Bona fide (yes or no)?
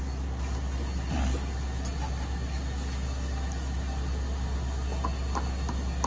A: yes